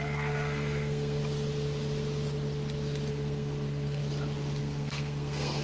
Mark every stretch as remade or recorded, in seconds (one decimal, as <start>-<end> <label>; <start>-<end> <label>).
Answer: 0.0-1.2 remade; 1.2-3.1 recorded; 3.1-4.0 remade; 4.0-4.6 recorded; 4.6-5.6 remade